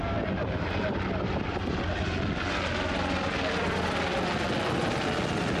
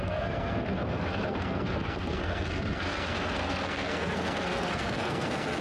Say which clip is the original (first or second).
first